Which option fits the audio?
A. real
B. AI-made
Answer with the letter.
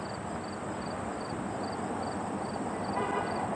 A